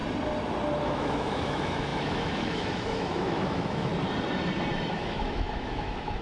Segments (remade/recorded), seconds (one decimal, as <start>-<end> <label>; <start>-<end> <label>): 0.0-0.8 recorded; 0.8-3.9 remade; 3.9-4.9 recorded; 4.9-6.2 remade